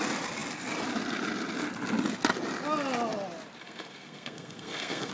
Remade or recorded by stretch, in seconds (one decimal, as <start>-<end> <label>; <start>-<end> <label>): 0.0-3.6 recorded; 3.6-5.1 remade